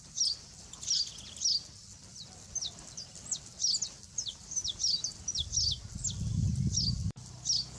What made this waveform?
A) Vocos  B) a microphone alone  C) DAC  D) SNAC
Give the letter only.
B